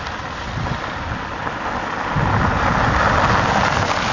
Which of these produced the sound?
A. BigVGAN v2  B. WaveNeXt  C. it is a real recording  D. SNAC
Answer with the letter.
C